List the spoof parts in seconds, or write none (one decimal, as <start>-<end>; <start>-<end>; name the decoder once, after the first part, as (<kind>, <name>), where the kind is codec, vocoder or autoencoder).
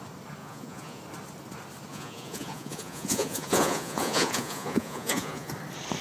0.4-1.0 (vocoder, Vocos); 1.9-5.5